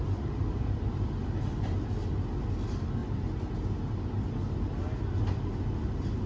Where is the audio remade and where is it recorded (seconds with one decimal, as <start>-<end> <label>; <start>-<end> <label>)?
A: 0.0-6.3 recorded